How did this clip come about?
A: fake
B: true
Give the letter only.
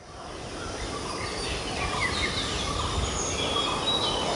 B